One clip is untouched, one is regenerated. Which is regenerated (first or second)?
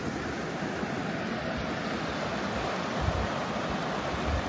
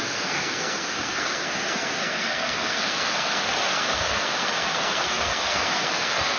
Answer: second